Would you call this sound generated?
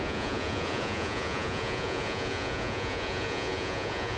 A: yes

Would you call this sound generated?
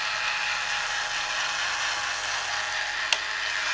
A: no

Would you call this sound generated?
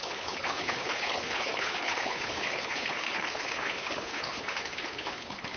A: yes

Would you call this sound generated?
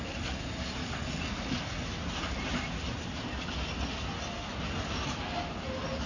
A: no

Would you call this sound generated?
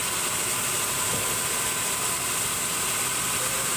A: no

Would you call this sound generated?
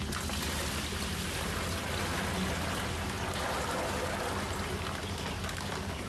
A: no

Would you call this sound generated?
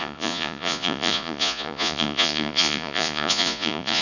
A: yes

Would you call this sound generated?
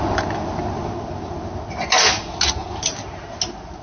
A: no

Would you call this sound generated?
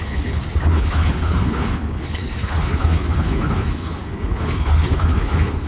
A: yes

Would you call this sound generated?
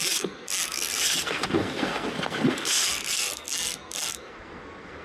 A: yes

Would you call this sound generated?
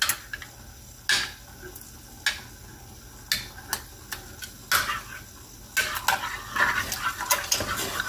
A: no